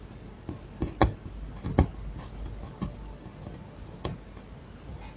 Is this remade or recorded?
recorded